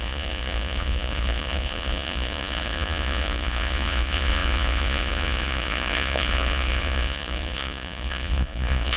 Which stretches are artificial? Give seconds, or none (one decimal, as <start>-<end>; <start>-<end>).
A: 0.0-9.0